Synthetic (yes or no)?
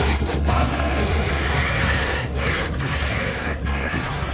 yes